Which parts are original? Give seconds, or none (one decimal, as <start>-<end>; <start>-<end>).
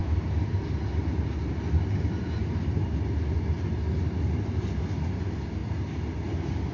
0.0-6.7